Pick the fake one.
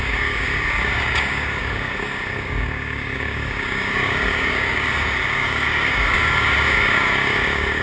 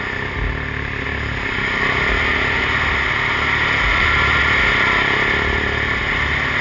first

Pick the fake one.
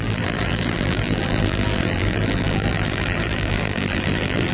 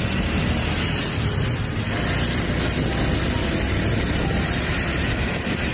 first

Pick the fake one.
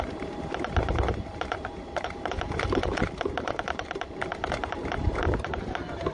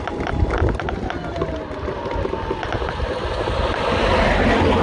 first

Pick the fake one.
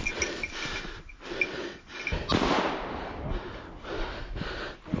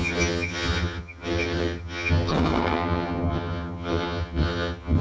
second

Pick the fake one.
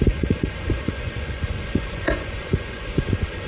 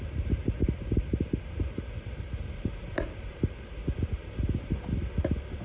first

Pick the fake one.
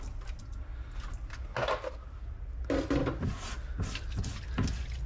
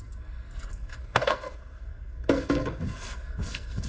second